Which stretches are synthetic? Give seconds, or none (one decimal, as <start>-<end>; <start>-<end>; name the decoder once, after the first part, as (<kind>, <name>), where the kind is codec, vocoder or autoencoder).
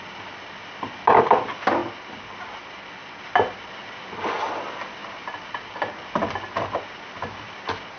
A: none